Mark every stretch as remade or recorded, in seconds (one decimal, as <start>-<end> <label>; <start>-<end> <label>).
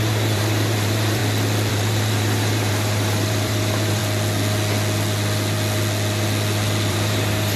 0.0-1.2 remade; 1.2-1.7 recorded; 1.7-4.0 remade; 4.0-6.9 recorded; 6.9-7.6 remade